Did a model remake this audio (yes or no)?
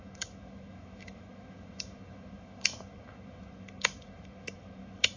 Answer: yes